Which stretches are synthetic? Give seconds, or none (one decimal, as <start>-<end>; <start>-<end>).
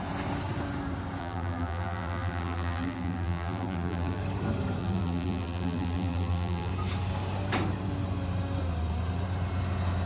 1.2-4.2; 4.8-6.7